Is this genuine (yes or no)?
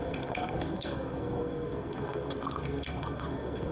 no